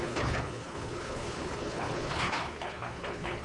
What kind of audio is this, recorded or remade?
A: remade